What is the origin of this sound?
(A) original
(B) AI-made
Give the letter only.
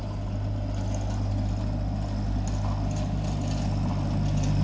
A